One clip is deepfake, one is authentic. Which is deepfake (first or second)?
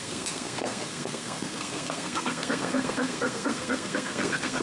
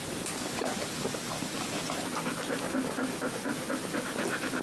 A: first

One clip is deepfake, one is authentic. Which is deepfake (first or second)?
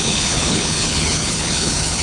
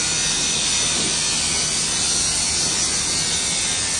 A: first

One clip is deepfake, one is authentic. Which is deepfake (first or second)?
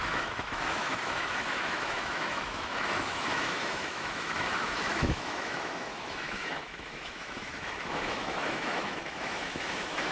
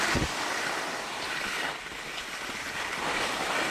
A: first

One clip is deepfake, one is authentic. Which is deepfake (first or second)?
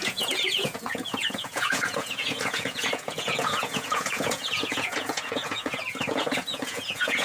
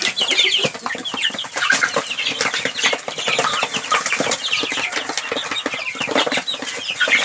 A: first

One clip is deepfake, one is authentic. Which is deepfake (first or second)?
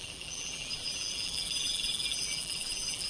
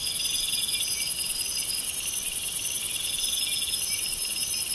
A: first